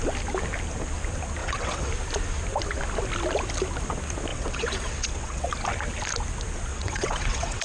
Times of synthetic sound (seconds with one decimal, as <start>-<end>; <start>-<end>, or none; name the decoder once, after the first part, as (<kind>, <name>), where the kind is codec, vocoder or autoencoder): 1.4-1.9 (vocoder, WaveNeXt); 4.3-5.5; 6.7-7.6